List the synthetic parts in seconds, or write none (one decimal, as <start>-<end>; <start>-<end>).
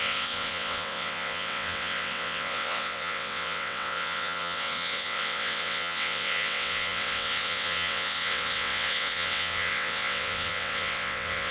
0.0-11.5